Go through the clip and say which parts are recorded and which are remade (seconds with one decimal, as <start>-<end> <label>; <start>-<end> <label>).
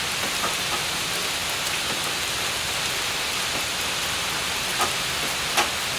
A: 0.0-6.0 recorded